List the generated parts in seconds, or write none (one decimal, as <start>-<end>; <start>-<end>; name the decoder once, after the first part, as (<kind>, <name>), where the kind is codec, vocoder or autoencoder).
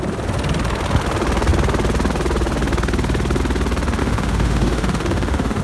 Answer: 4.0-5.6 (autoencoder, DAC-VAE)